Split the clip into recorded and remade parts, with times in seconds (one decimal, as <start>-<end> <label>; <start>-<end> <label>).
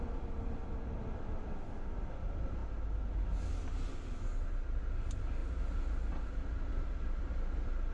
0.0-7.9 recorded